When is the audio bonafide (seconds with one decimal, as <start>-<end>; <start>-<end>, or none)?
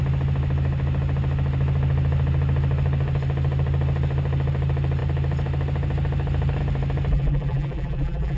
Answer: 0.0-7.1